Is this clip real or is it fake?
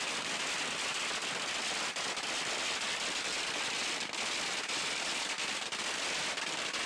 real